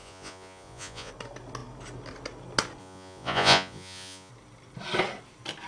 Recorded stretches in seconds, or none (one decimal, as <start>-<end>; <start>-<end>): 1.1-2.8; 4.3-5.7